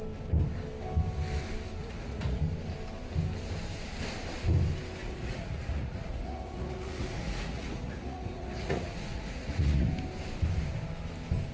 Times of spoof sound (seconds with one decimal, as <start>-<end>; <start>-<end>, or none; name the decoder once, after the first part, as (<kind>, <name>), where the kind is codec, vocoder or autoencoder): 1.8-2.4 (vocoder, Vocos); 5.0-9.9